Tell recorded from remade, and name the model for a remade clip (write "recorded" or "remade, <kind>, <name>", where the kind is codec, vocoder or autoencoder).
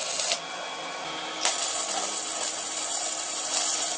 recorded